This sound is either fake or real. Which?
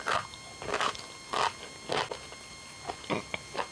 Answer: real